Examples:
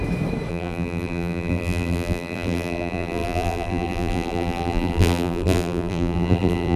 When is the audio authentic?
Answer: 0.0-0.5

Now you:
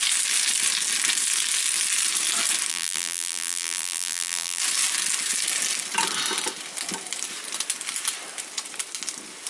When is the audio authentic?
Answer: 0.0-2.7; 4.6-9.5

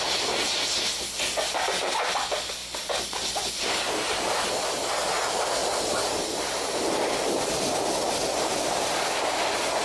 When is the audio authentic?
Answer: 0.0-9.8

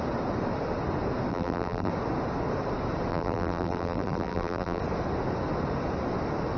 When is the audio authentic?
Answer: 0.0-1.3; 1.9-3.1; 4.8-6.6

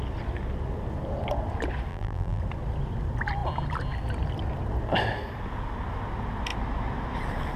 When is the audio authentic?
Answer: 0.0-1.9; 2.4-7.6